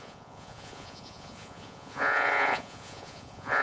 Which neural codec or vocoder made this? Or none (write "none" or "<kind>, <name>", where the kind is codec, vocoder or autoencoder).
vocoder, Vocos